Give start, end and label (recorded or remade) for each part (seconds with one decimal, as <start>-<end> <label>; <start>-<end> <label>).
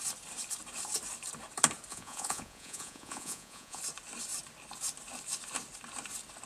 0.0-1.9 recorded; 1.9-3.8 remade; 3.8-6.5 recorded